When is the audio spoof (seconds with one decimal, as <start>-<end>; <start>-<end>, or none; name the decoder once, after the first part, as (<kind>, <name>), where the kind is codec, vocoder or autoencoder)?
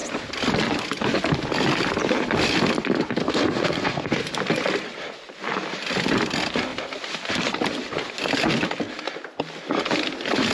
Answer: 3.2-4.3 (codec, SNAC)